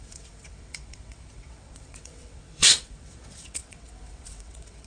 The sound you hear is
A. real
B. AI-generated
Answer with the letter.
B